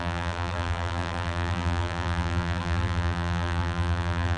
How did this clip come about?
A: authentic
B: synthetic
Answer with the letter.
B